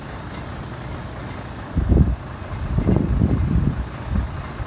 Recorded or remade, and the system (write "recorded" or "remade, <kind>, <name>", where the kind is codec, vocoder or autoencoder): recorded